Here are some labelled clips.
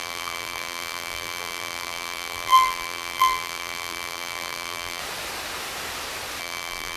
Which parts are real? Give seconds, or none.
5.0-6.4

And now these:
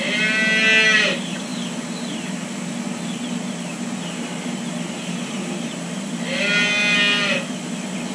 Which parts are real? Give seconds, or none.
0.0-8.1

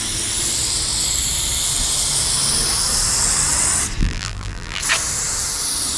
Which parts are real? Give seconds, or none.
0.0-4.0; 4.8-6.0